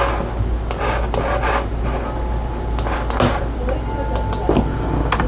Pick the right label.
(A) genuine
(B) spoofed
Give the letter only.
A